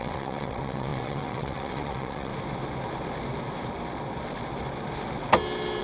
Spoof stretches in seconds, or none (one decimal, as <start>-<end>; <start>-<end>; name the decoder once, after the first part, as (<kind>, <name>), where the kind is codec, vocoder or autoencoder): 0.0-2.3 (vocoder, WaveNeXt)